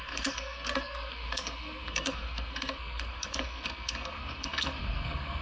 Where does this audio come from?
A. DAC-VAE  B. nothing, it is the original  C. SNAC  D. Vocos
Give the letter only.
C